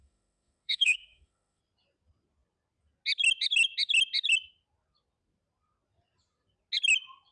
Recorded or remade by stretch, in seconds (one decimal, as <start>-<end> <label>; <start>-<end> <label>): 0.0-1.6 remade; 1.6-7.3 recorded